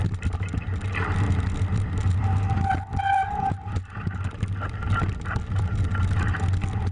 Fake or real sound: real